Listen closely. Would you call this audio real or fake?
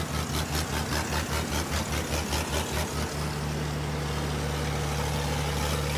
real